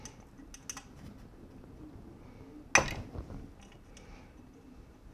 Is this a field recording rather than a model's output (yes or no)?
yes